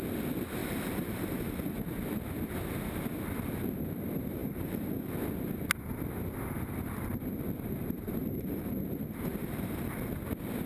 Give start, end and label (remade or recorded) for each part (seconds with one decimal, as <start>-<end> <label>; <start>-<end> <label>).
0.0-0.6 recorded; 0.6-1.7 remade; 1.7-4.4 recorded; 4.4-5.1 remade; 5.1-8.2 recorded; 8.2-8.7 remade; 8.7-9.4 recorded; 9.4-10.1 remade; 10.1-10.7 recorded